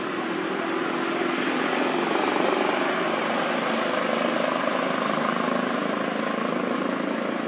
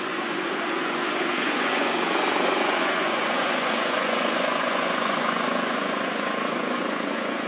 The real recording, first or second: first